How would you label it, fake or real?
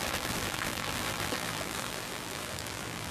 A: fake